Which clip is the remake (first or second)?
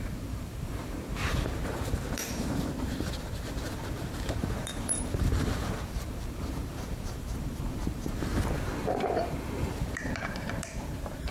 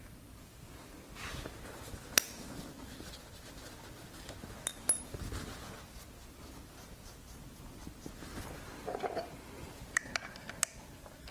first